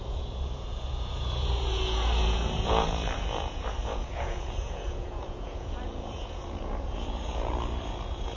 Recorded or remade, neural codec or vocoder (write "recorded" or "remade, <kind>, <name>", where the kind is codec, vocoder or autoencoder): remade, vocoder, Vocos